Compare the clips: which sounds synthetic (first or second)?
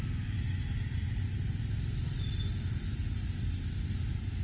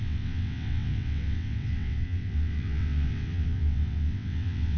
second